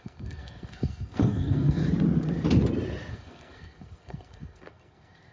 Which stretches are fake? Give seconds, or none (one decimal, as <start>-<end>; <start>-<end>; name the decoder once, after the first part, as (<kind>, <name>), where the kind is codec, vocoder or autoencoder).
0.0-1.8 (codec, SNAC); 3.1-5.3